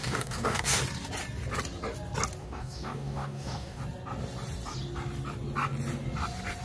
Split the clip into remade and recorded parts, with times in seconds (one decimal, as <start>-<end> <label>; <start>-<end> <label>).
0.0-0.8 remade; 0.8-2.4 recorded; 2.4-3.8 remade; 3.8-6.6 recorded